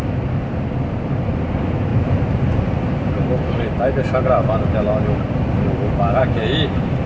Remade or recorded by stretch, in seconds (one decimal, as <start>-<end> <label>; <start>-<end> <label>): 0.0-7.1 recorded